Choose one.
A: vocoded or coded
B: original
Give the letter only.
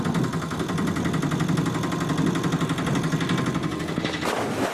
B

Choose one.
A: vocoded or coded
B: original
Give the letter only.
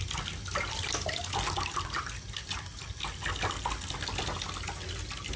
B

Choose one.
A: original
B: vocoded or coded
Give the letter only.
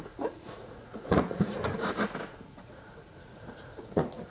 B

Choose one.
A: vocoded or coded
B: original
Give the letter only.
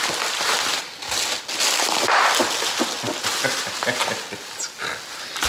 B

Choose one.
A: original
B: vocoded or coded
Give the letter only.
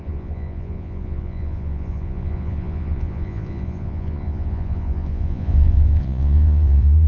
B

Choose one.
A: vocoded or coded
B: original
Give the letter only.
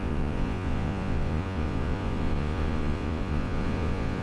A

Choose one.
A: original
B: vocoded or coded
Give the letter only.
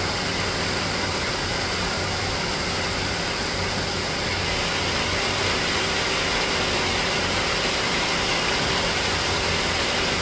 A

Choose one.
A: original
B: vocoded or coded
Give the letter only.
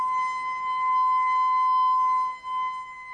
A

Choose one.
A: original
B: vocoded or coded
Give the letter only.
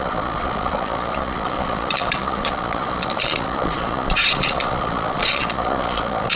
B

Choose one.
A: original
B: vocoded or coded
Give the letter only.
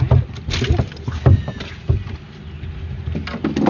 A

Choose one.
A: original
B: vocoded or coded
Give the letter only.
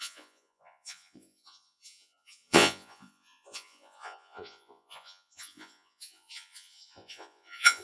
B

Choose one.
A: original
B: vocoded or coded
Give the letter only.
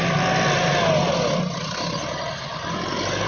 A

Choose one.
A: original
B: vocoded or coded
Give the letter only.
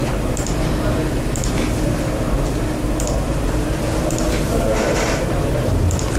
A